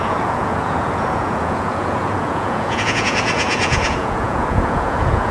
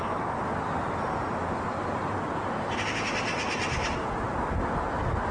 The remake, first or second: first